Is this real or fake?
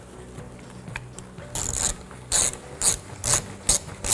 real